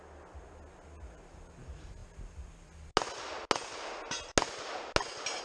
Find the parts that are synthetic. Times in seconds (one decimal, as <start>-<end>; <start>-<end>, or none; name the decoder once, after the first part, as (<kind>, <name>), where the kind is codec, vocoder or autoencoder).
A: none